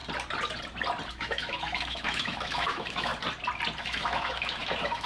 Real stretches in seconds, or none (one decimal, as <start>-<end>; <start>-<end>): 0.0-1.1; 3.1-3.8